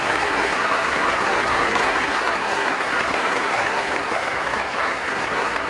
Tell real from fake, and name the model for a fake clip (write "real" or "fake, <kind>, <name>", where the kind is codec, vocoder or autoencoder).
fake, codec, SNAC